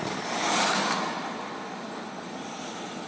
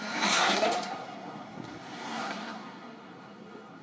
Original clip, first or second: first